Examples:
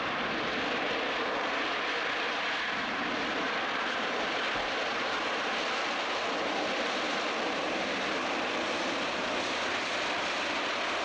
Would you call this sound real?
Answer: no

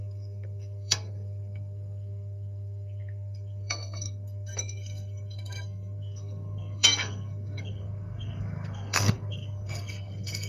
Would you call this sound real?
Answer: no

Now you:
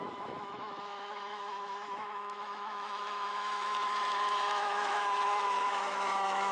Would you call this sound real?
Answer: no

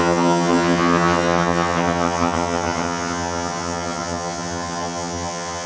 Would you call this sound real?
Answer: no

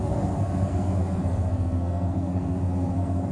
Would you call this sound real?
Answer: no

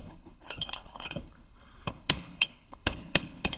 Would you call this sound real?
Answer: no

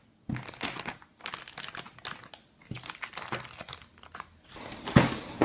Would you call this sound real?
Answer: yes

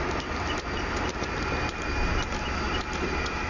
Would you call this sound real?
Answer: no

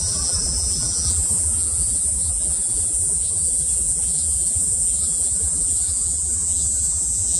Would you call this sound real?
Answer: no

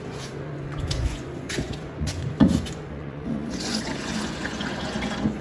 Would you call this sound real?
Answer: no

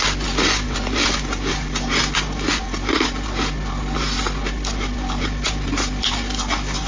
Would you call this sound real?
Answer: yes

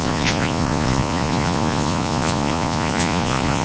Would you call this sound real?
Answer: no